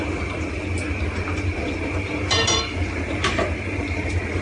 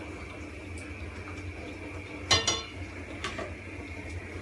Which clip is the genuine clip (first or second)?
second